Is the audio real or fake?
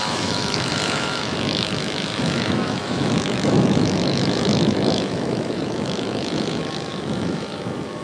fake